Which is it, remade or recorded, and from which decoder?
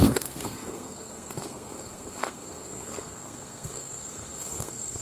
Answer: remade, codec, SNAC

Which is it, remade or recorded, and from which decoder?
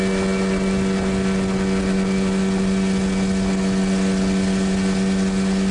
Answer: recorded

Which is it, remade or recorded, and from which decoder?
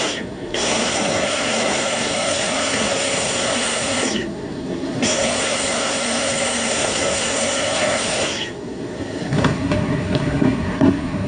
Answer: remade, codec, SNAC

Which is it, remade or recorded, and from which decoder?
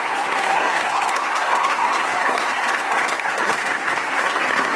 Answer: remade, codec, SNAC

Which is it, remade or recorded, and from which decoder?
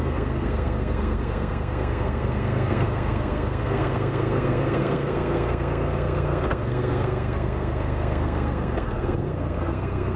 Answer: remade, codec, SNAC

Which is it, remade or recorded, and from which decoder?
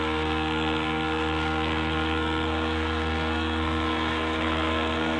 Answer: remade, codec, SNAC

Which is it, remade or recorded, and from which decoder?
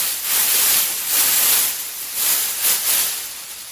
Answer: recorded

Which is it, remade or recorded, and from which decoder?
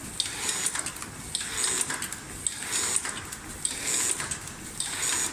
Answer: recorded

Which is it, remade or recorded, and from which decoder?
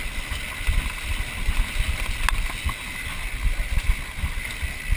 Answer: recorded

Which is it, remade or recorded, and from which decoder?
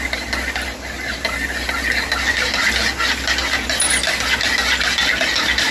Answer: recorded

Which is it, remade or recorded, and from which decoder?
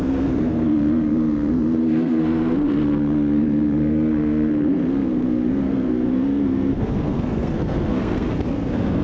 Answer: remade, codec, SNAC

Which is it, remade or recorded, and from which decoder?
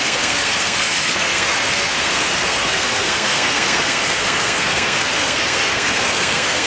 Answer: remade, codec, SNAC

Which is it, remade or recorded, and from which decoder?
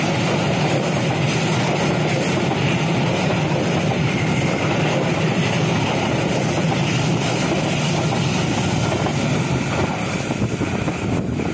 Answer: recorded